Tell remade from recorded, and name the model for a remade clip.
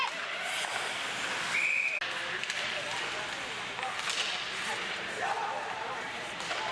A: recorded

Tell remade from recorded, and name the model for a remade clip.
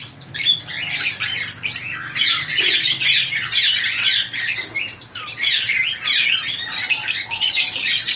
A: recorded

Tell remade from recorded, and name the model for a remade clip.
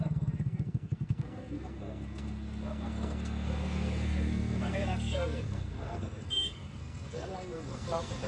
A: remade, codec, SNAC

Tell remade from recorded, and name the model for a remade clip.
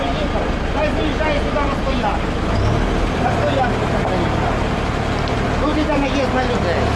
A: recorded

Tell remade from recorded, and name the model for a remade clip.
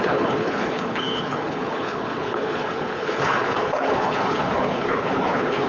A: remade, codec, HILCodec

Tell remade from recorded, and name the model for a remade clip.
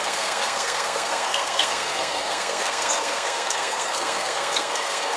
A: remade, codec, SNAC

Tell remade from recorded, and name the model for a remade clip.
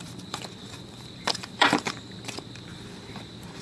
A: remade, vocoder, BigVGAN v2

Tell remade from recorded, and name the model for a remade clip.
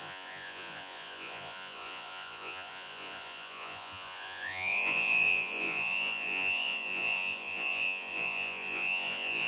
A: remade, vocoder, Vocos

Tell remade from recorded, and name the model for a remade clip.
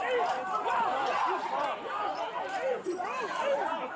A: recorded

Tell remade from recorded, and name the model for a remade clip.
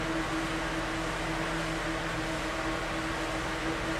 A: recorded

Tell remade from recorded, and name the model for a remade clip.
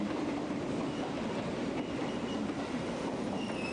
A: remade, vocoder, BigVGAN v2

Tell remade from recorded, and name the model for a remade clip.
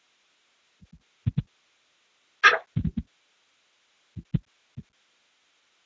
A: recorded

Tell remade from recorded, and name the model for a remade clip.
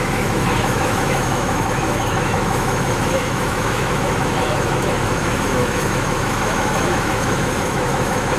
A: remade, autoencoder, DAC-VAE